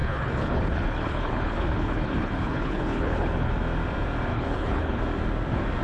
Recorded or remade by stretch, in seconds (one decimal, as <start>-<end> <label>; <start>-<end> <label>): 0.0-3.5 remade; 3.5-4.3 recorded; 4.3-5.0 remade; 5.0-5.8 recorded